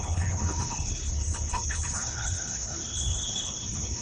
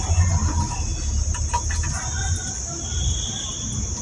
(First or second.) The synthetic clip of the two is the first